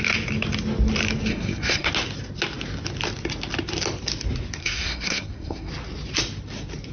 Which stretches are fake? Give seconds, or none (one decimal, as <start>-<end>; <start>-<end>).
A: 1.3-1.9; 4.6-5.7